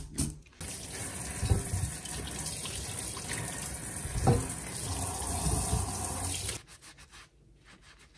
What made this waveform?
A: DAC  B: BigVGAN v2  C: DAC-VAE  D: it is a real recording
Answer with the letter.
D